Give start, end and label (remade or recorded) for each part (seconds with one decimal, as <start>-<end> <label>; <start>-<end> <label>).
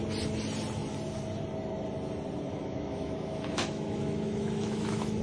0.0-2.5 recorded; 2.5-5.2 remade